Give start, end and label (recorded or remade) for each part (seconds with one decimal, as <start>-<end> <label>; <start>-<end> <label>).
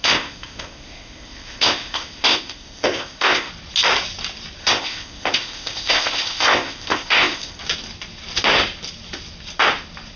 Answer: 0.0-3.5 remade; 3.5-4.6 recorded; 4.6-7.6 remade; 7.6-10.2 recorded